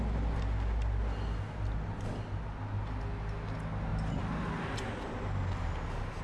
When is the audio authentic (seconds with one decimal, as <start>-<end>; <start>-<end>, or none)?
0.0-6.2